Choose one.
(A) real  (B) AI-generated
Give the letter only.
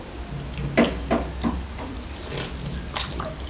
A